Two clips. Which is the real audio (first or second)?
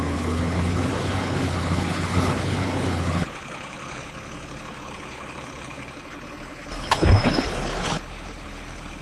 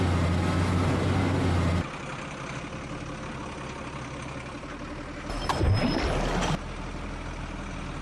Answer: second